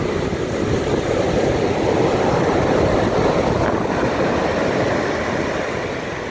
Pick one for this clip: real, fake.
real